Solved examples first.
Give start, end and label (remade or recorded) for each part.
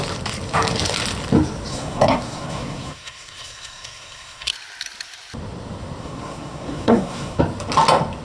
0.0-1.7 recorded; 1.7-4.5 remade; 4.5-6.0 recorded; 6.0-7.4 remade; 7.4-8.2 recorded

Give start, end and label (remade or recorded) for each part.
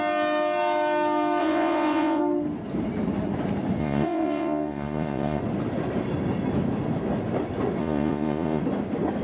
0.0-1.4 recorded; 1.4-2.2 remade; 2.2-3.8 recorded; 3.8-5.4 remade; 5.4-7.8 recorded; 7.8-8.6 remade; 8.6-9.2 recorded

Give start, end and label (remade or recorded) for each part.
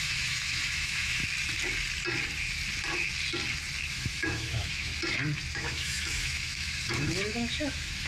0.0-1.2 remade; 1.2-3.9 recorded; 3.9-4.9 remade; 4.9-5.5 recorded; 5.5-8.1 remade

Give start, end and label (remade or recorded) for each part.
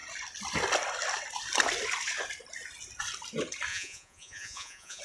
0.0-3.7 recorded; 3.7-5.0 remade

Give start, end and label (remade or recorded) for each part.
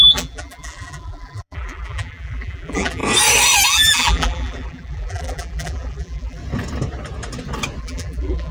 0.0-3.0 remade; 3.0-3.7 recorded; 3.7-6.4 remade; 6.4-7.8 recorded; 7.8-8.5 remade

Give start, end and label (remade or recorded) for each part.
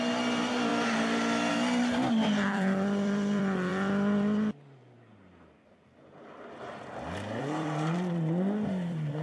0.0-0.7 remade; 0.7-1.5 recorded; 1.5-3.7 remade; 3.7-7.4 recorded; 7.4-9.2 remade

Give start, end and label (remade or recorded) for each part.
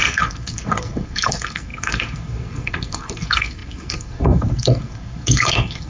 0.0-5.9 remade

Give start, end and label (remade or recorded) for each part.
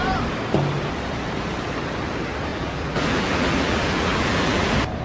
0.0-2.5 recorded; 2.5-4.6 remade; 4.6-5.0 recorded